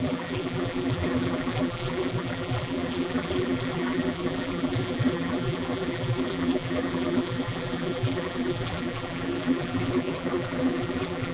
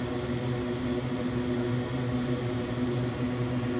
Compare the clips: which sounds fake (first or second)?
first